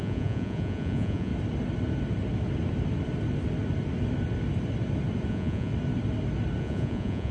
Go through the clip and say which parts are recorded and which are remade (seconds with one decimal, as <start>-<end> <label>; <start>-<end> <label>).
0.0-1.3 remade; 1.3-5.3 recorded; 5.3-5.7 remade; 5.7-6.6 recorded; 6.6-7.3 remade